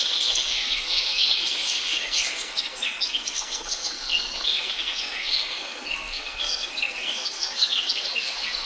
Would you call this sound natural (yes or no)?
no